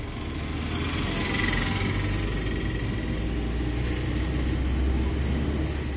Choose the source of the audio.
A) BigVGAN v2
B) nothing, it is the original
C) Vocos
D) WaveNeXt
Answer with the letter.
B